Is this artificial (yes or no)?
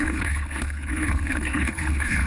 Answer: yes